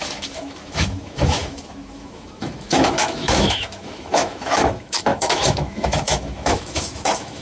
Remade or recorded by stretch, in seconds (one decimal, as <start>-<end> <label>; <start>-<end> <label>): 0.0-7.4 remade